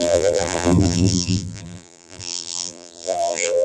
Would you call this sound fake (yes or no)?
yes